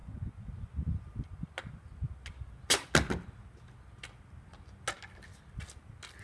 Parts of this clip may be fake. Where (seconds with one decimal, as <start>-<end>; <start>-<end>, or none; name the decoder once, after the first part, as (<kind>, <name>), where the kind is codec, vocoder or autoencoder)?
0.0-0.5 (vocoder, Vocos)